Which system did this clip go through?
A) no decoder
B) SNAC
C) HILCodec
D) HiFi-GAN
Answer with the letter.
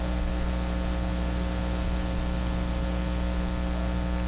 A